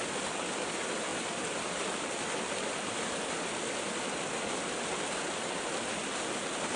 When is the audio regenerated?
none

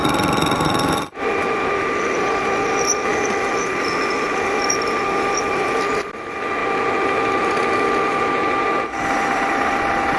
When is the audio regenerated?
none

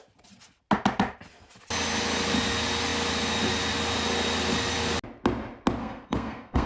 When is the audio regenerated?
5.8-6.7 (codec, SNAC)